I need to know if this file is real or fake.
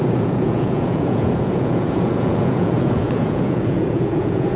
fake